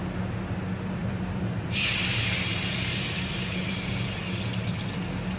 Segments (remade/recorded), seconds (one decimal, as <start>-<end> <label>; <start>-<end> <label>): 0.0-1.0 recorded; 1.0-4.2 remade; 4.2-5.4 recorded